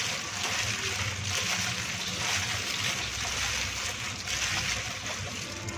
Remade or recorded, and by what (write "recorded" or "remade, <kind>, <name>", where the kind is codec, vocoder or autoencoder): recorded